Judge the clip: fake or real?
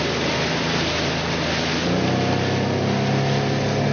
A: real